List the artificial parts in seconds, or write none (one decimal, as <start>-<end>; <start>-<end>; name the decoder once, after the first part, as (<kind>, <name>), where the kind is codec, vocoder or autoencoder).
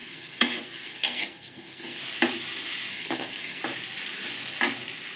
0.0-2.0 (codec, SNAC); 2.9-3.6